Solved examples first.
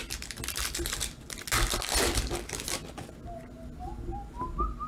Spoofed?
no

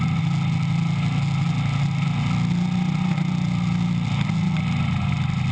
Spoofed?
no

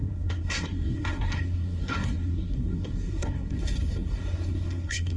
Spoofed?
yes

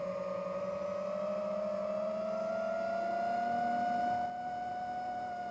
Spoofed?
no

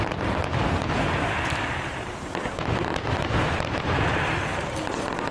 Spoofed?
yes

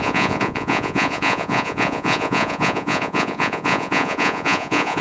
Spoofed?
yes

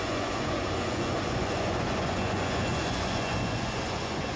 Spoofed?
yes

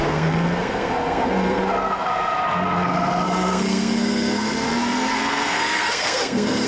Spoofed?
yes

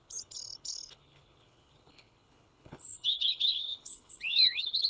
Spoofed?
yes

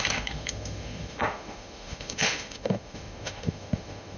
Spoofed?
yes